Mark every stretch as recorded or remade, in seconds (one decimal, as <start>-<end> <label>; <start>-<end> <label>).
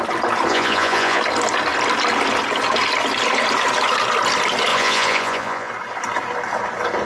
0.0-0.5 recorded; 0.5-1.2 remade; 1.2-4.7 recorded; 4.7-5.7 remade; 5.7-7.1 recorded